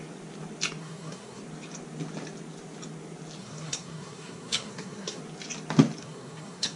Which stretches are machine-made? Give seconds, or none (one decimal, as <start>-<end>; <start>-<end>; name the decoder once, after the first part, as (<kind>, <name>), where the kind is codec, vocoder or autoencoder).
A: 0.8-1.4 (codec, SNAC); 3.4-5.2; 6.0-6.8